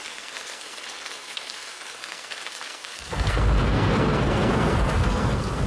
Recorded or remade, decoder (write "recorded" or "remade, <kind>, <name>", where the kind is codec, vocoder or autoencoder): remade, codec, SNAC